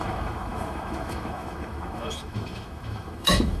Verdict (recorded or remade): remade